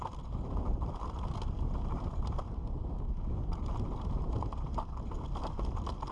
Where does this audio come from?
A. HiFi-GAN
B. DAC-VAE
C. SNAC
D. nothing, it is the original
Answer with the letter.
D